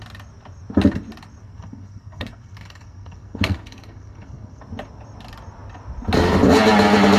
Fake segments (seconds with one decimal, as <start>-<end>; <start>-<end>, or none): 1.4-4.6